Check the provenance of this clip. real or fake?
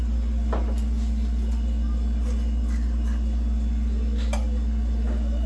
real